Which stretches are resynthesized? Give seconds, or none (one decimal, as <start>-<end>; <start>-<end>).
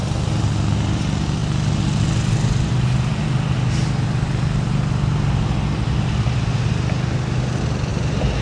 7.9-8.4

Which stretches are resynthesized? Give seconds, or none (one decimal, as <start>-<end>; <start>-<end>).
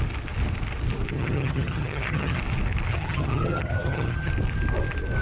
1.1-2.4; 2.9-4.3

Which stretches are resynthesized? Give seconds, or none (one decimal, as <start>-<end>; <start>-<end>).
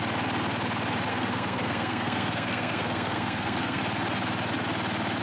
1.1-3.8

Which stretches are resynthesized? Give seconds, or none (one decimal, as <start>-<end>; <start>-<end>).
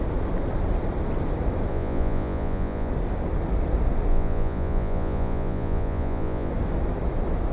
1.7-2.9; 4.1-6.5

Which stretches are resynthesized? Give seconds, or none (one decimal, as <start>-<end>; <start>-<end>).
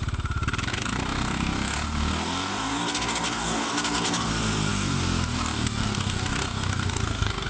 0.7-4.3; 4.7-7.5